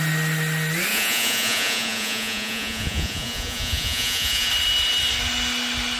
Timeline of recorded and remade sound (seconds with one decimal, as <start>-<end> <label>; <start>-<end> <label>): 0.0-0.9 recorded; 0.9-4.5 remade; 4.5-6.0 recorded